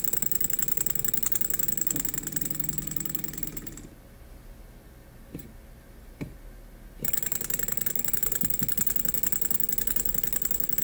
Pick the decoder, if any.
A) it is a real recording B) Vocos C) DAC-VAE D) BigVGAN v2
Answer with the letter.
A